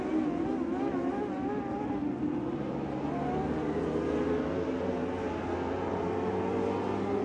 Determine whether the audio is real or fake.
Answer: real